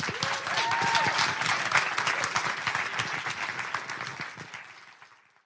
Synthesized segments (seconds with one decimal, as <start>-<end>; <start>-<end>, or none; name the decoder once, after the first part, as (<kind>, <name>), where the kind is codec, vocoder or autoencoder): none